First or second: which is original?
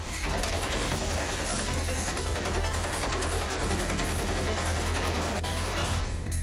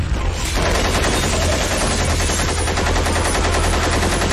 second